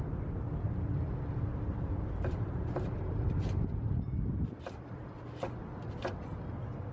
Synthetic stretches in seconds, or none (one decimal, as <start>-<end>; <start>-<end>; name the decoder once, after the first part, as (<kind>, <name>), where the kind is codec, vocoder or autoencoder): 1.5-5.6 (vocoder, BigVGAN v2)

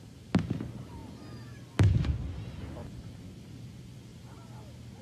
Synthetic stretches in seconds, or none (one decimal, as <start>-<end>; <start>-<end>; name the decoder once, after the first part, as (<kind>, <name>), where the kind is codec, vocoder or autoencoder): 0.0-1.0 (vocoder, BigVGAN v2); 2.4-2.8; 3.6-4.1

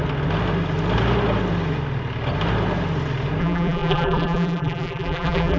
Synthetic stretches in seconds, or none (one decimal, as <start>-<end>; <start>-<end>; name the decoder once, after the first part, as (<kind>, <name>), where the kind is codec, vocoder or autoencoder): 3.4-5.6 (vocoder, BigVGAN v2)

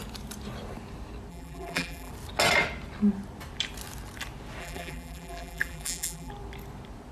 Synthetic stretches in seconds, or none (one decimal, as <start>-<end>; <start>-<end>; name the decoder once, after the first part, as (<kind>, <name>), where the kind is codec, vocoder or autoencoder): 1.3-2.1 (vocoder, BigVGAN v2); 4.6-6.3

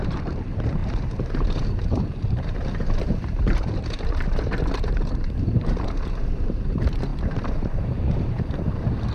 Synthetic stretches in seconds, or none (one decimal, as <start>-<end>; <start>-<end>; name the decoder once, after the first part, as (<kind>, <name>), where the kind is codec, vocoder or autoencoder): 0.0-9.1 (vocoder, BigVGAN v2)

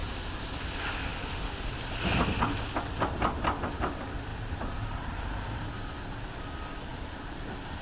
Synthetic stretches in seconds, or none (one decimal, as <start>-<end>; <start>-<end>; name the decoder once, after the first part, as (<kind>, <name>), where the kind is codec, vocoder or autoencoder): 4.3-6.2 (vocoder, BigVGAN v2)

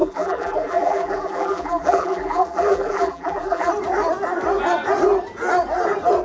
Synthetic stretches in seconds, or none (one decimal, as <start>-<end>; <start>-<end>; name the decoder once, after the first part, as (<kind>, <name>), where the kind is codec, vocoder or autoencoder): 0.0-3.7 (vocoder, BigVGAN v2)

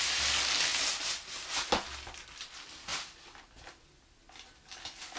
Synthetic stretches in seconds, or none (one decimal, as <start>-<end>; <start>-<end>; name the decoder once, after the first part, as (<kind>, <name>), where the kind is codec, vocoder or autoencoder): 2.9-3.4 (vocoder, BigVGAN v2)